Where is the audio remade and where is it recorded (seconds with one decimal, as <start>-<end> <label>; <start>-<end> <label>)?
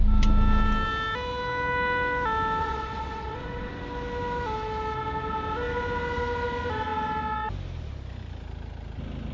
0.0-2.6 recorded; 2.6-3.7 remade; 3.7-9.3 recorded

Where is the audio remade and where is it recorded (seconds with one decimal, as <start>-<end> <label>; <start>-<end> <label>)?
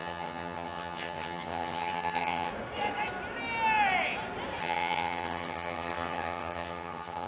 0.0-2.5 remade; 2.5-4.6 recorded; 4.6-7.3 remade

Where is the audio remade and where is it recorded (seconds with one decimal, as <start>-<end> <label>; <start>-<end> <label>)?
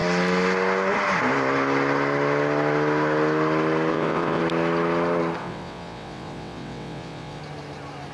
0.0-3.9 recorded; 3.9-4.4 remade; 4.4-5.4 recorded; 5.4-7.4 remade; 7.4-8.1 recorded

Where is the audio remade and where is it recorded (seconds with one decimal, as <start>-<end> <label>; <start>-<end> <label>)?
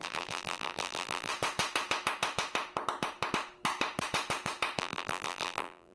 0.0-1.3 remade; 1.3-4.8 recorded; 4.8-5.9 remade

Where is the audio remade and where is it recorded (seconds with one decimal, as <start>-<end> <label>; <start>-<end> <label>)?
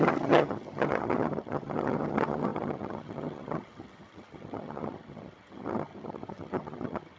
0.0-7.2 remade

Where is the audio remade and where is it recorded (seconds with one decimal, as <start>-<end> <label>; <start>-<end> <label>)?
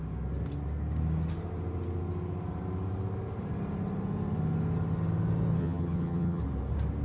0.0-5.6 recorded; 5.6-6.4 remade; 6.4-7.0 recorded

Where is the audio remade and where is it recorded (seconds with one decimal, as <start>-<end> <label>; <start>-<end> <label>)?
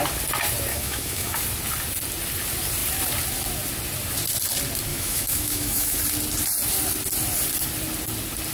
0.0-0.7 recorded; 0.7-1.4 remade; 1.4-4.9 recorded; 4.9-6.0 remade; 6.0-8.5 recorded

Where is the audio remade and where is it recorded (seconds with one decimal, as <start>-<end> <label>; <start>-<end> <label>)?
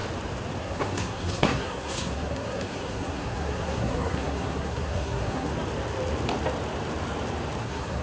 0.0-0.6 recorded; 0.6-5.5 remade; 5.5-7.6 recorded; 7.6-8.0 remade